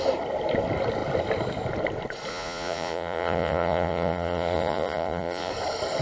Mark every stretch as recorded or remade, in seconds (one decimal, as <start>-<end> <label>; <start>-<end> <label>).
0.0-2.3 recorded; 2.3-5.5 remade; 5.5-6.0 recorded